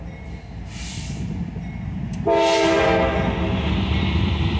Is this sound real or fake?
real